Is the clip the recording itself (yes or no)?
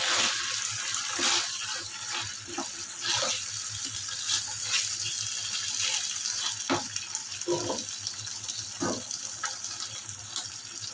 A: yes